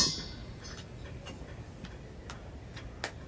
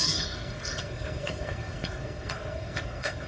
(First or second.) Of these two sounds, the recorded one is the first